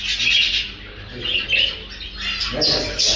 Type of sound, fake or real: real